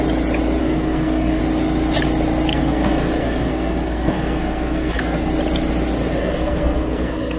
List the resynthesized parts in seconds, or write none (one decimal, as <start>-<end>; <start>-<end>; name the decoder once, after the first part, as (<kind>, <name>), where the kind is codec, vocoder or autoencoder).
0.6-1.4 (codec, SNAC); 2.5-5.3; 6.2-7.4